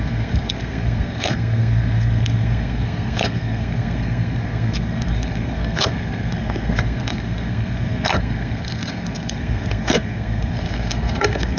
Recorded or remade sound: remade